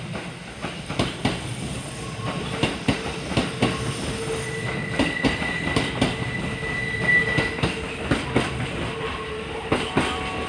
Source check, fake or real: real